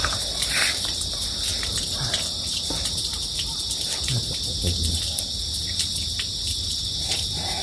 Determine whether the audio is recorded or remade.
remade